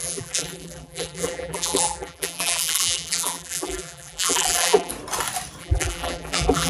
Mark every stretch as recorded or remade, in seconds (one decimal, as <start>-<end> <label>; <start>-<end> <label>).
0.0-4.9 remade; 4.9-5.6 recorded; 5.6-6.7 remade